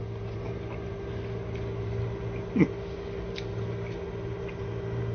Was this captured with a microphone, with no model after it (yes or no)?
yes